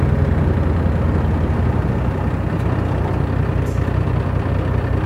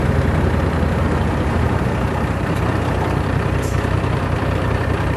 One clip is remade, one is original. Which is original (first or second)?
first